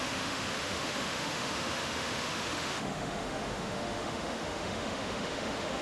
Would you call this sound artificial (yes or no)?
yes